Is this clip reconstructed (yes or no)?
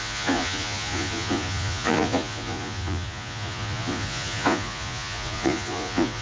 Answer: yes